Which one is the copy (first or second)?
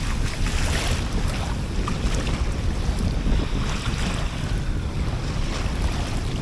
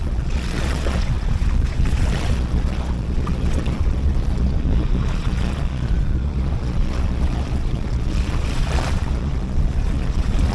second